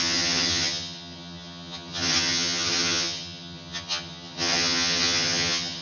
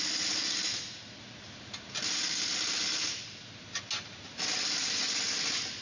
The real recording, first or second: second